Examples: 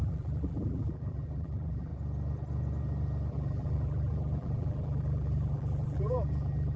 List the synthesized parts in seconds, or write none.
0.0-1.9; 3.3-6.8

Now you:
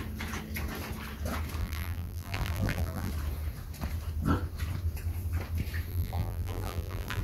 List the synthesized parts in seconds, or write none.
1.6-3.1; 5.9-7.2